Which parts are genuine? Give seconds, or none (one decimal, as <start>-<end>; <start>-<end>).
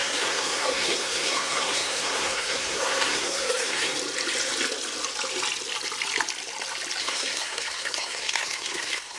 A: 3.9-7.0